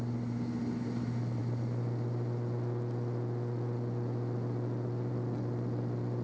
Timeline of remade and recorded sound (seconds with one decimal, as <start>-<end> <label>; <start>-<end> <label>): 0.0-6.2 recorded